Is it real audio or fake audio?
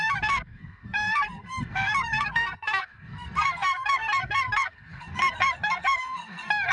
fake